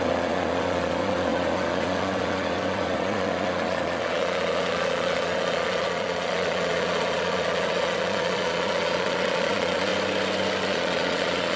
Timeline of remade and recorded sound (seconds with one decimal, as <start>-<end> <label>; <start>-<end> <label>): 0.0-9.9 remade; 9.9-10.6 recorded; 10.6-11.6 remade